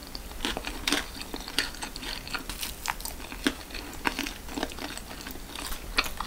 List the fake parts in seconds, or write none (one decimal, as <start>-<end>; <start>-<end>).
0.0-0.9; 3.6-4.2